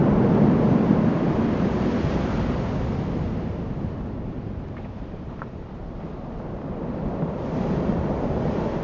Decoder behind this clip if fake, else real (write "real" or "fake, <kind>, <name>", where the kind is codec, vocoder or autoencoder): real